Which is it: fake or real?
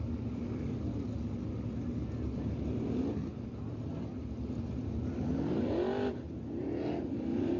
real